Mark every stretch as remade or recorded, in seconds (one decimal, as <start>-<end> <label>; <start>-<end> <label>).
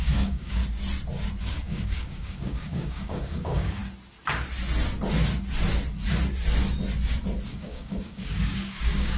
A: 0.0-0.6 remade; 0.6-1.4 recorded; 1.4-3.8 remade; 3.8-7.5 recorded; 7.5-9.2 remade